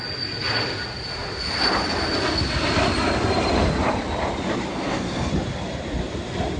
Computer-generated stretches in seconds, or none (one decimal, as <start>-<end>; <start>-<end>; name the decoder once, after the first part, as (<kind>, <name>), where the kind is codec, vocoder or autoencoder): 4.7-5.3 (codec, SNAC)